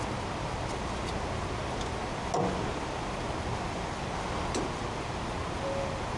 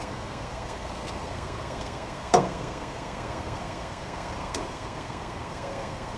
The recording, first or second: first